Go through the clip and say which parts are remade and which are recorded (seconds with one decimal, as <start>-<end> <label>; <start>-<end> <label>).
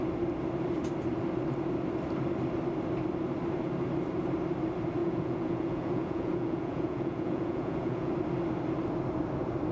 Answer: 0.0-5.0 recorded; 5.0-8.1 remade; 8.1-9.7 recorded